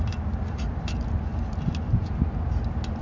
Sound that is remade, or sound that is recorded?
recorded